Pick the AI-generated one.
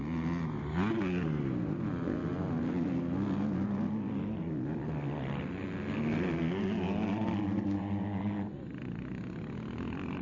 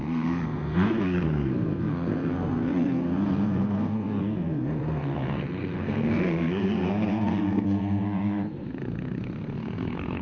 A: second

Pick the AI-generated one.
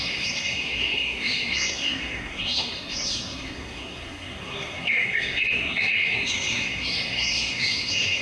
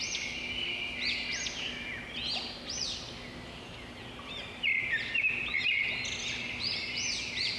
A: first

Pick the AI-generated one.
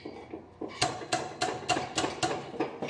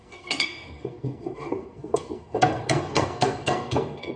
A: second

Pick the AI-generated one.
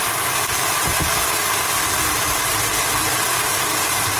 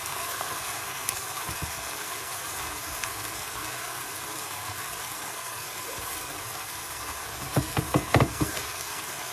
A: second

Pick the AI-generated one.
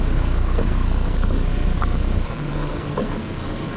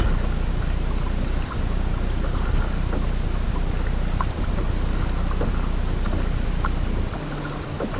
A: first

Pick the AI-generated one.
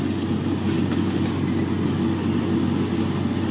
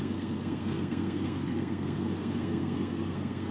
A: second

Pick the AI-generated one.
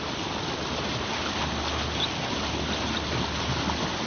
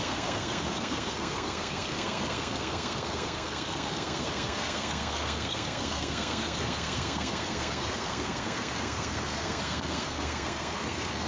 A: second